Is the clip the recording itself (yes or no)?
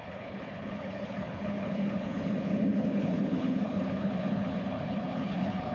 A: no